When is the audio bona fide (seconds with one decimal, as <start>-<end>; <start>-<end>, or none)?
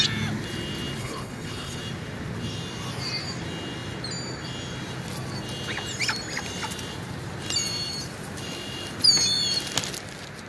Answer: 0.0-1.0; 1.8-10.5